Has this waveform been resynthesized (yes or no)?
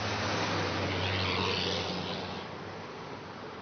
no